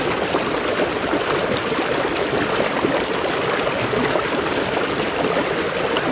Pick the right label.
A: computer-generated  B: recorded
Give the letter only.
A